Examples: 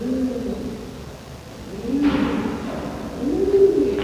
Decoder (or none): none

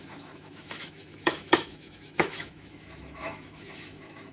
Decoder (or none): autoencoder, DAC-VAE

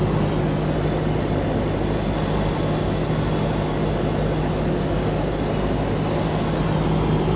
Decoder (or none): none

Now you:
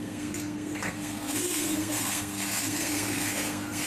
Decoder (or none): codec, SNAC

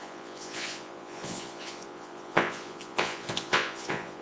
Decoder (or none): vocoder, Vocos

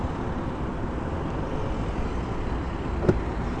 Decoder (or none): none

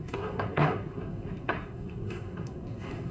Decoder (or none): codec, SNAC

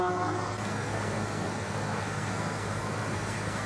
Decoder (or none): codec, SNAC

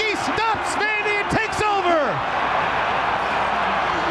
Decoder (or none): none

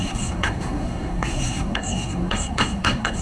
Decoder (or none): codec, SNAC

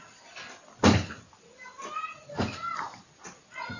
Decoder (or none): none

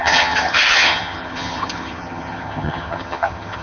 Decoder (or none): vocoder, HiFi-GAN